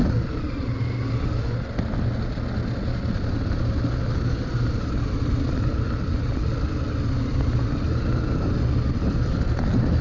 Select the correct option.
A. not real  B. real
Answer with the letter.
B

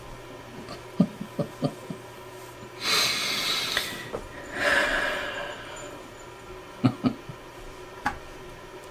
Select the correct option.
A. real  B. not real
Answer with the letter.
A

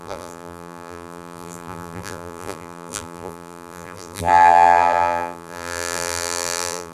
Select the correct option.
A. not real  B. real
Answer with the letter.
A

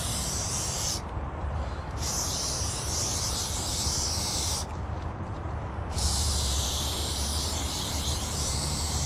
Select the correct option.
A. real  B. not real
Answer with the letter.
B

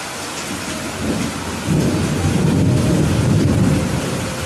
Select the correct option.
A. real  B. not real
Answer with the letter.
A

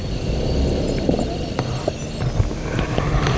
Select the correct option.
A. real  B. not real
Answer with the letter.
A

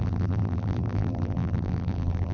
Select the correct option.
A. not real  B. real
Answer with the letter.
A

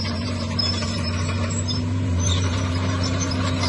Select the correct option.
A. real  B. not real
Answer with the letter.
B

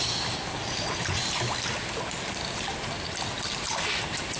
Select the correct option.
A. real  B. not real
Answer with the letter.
A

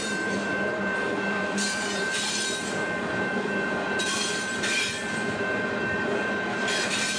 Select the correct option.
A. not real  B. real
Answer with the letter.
A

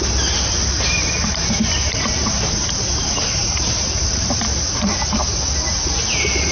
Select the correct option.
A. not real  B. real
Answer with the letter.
A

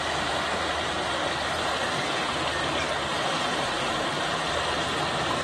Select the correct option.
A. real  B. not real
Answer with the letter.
B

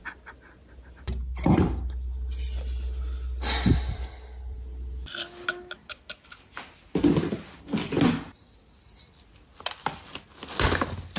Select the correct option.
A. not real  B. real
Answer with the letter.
B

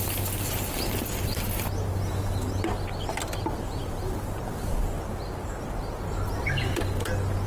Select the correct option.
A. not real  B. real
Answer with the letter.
B